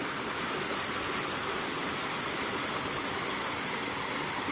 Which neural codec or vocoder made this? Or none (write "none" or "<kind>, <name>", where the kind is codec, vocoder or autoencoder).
none